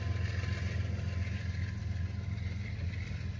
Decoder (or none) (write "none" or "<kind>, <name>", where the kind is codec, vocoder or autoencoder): none